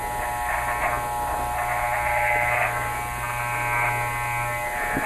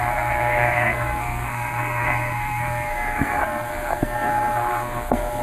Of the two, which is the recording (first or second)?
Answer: first